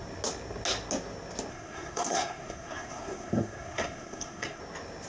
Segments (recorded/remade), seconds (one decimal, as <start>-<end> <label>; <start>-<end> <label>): 0.0-1.5 recorded; 1.5-4.6 remade; 4.6-5.1 recorded